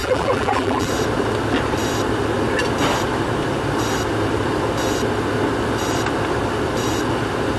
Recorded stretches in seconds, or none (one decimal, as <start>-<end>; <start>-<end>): 0.9-7.6